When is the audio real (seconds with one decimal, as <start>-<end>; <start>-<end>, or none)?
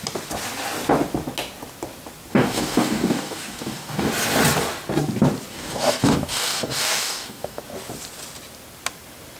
0.0-2.3; 4.1-5.5; 7.6-9.4